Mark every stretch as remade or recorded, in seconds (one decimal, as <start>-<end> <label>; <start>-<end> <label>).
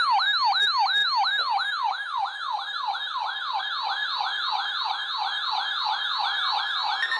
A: 0.0-7.2 recorded